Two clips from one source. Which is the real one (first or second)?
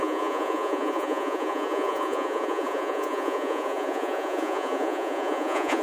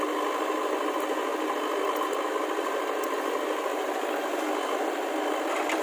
second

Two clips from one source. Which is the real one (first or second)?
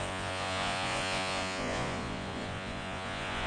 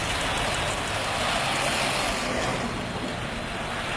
second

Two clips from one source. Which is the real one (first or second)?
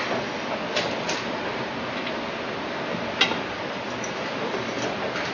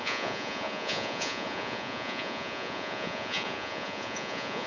first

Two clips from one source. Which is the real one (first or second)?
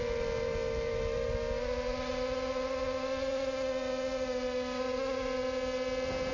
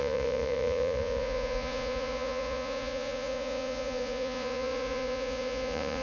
first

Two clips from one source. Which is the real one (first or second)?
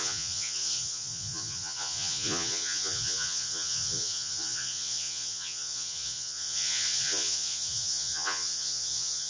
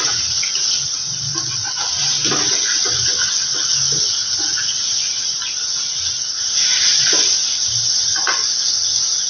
second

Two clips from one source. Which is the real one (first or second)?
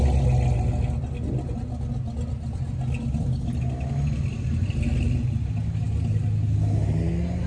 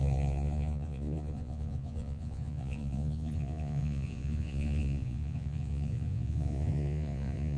first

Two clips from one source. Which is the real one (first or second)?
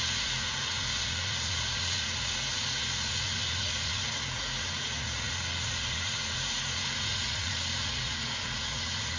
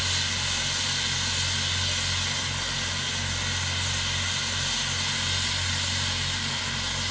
second